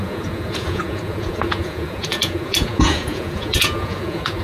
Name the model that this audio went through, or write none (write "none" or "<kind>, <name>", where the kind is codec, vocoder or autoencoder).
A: vocoder, Vocos